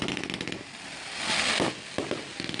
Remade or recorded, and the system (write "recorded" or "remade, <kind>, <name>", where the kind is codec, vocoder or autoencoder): recorded